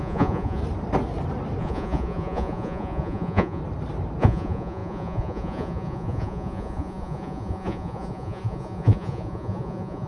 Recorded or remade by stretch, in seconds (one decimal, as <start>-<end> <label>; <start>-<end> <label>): 0.0-0.6 remade; 0.6-1.6 recorded; 1.6-3.6 remade; 3.6-4.2 recorded; 4.2-10.1 remade